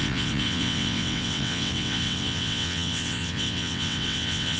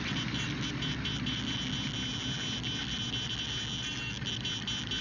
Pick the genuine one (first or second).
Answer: second